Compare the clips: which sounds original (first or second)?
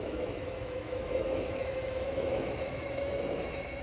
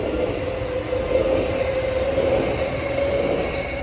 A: second